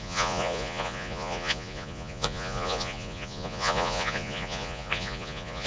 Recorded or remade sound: remade